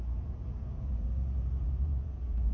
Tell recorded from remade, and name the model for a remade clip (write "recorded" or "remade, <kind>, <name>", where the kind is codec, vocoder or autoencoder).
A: remade, vocoder, Vocos